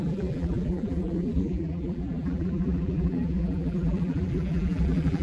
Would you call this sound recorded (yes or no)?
no